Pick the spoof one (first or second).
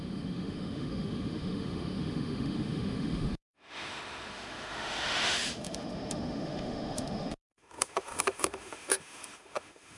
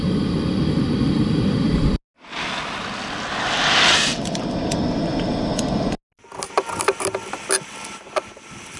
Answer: first